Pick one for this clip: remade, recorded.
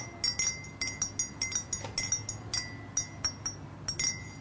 recorded